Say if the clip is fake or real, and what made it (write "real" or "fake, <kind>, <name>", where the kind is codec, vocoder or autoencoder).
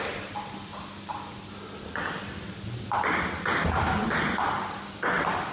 real